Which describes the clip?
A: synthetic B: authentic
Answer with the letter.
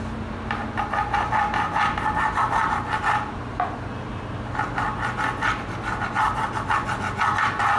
B